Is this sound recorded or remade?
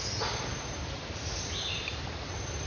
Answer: recorded